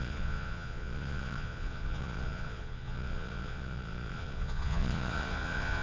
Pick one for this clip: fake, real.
fake